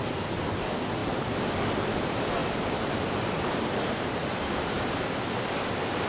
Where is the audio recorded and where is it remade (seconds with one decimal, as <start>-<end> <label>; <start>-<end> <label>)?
0.0-2.4 recorded; 2.4-5.4 remade; 5.4-6.1 recorded